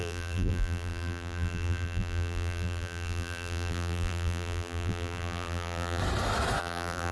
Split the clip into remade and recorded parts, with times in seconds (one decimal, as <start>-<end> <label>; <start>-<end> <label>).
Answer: 0.0-6.0 remade; 6.0-6.6 recorded; 6.6-7.1 remade